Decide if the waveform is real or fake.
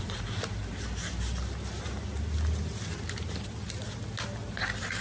real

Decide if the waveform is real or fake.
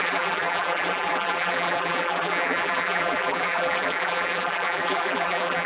fake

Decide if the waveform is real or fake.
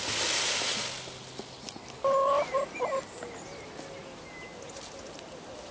real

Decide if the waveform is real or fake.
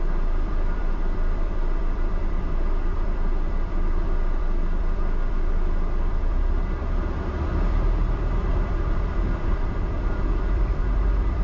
fake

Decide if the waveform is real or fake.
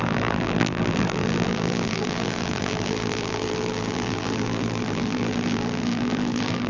fake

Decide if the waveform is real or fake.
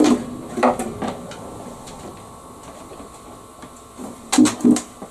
real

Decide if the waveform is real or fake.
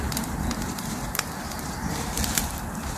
fake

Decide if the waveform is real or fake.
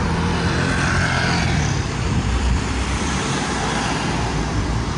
fake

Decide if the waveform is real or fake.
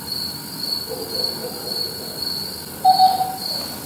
real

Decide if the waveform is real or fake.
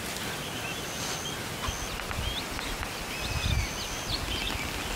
real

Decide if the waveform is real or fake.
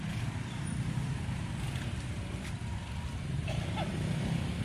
fake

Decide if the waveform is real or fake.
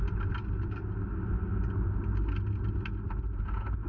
real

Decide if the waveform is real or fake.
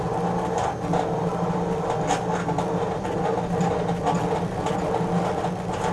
real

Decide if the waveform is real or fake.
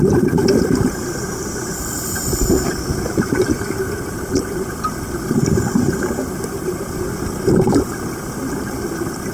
fake